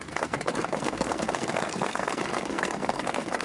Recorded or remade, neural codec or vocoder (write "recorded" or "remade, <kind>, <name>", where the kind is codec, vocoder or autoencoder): remade, codec, SNAC